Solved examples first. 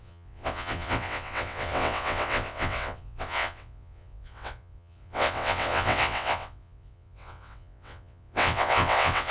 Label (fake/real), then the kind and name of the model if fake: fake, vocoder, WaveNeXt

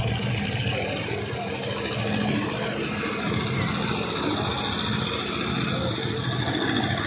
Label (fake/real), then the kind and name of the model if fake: real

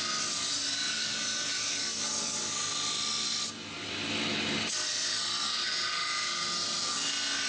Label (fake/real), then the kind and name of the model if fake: real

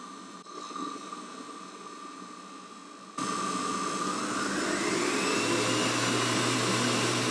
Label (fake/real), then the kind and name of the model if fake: real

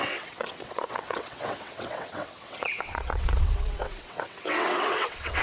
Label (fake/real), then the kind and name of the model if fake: fake, vocoder, WaveNeXt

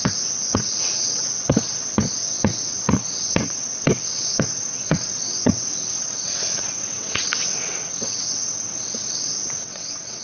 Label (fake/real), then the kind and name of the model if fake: fake, vocoder, WaveNeXt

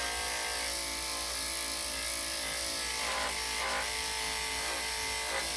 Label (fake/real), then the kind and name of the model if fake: real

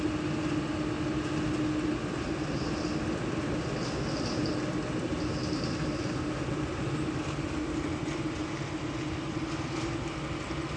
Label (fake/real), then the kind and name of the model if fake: real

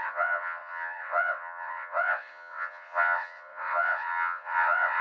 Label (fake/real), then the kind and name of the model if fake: fake, vocoder, WaveNeXt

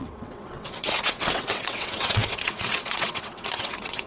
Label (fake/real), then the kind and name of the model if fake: fake, vocoder, WaveNeXt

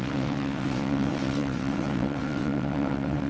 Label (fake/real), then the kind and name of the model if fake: fake, vocoder, WaveNeXt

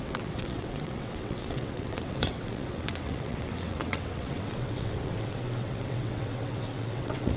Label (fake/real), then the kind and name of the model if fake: fake, vocoder, WaveNeXt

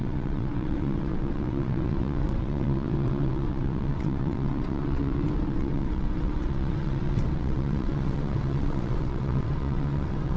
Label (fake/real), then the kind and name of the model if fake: fake, vocoder, WaveNeXt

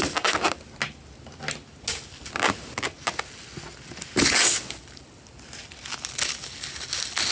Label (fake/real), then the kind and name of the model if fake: real